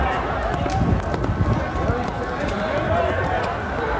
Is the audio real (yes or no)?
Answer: yes